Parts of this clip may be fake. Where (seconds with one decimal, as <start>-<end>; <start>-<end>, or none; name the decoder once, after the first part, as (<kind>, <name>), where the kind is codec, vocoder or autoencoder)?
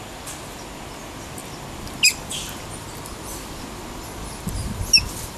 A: none